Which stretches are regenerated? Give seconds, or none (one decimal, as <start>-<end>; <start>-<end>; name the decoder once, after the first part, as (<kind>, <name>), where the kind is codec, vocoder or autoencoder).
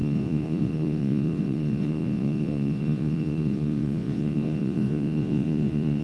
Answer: 0.0-6.0 (vocoder, Vocos)